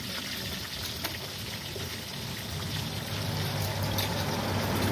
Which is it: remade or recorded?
recorded